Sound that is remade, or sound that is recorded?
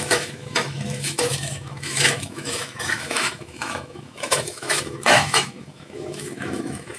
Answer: remade